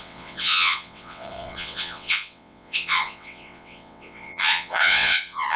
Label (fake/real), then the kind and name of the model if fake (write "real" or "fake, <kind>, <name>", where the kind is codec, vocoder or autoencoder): fake, vocoder, WaveNeXt